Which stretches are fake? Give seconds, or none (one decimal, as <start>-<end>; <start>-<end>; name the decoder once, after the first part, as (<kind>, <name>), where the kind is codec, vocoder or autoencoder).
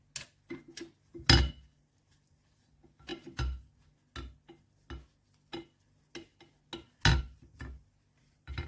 none